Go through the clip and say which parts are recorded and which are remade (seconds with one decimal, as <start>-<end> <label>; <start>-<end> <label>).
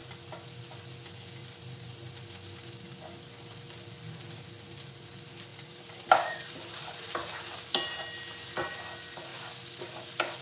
0.0-1.4 recorded; 1.4-2.3 remade; 2.3-5.5 recorded; 5.5-7.6 remade; 7.6-10.4 recorded